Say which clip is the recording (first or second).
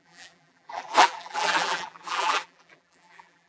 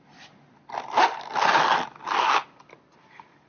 second